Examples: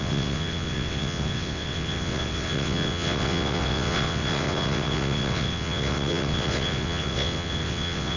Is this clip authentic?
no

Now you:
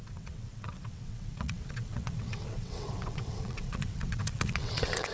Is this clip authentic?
no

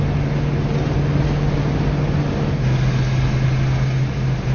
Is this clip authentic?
yes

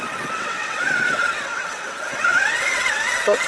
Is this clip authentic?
no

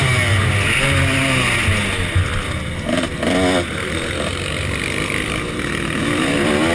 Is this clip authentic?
yes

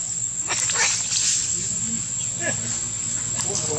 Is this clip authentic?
yes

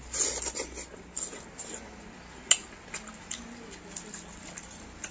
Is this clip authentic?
yes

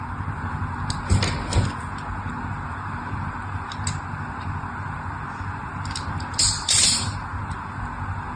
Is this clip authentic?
yes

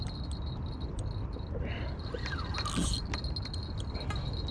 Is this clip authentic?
yes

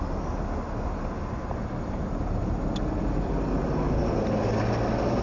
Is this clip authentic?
yes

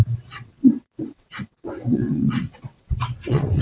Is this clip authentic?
no